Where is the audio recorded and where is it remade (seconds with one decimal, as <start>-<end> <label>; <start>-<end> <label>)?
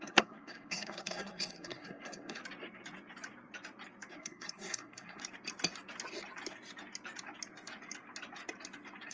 0.0-2.4 remade; 2.4-4.1 recorded; 4.1-5.2 remade; 5.2-9.1 recorded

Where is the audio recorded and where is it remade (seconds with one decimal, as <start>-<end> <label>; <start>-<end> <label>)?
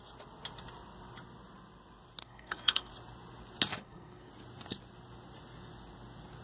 0.0-2.2 recorded; 2.2-2.9 remade; 2.9-3.7 recorded; 3.7-4.3 remade; 4.3-6.4 recorded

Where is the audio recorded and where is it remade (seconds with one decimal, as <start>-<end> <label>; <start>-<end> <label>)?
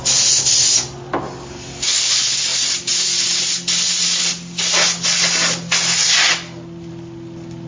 0.0-7.7 recorded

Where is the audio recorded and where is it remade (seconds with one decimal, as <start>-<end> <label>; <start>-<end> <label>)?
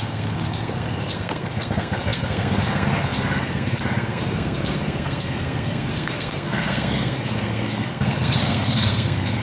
0.0-9.4 remade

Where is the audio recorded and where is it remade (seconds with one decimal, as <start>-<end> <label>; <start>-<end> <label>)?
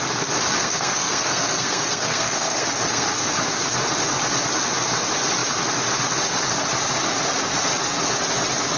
0.0-0.6 recorded; 0.6-3.3 remade; 3.3-8.8 recorded